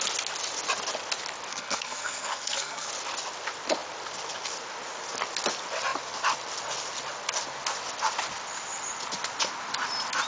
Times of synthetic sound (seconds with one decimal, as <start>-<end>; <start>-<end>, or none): 1.5-2.9